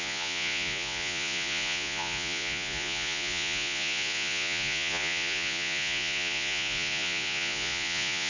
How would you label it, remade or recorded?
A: remade